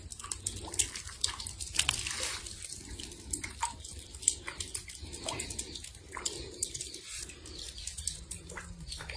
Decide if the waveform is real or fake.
real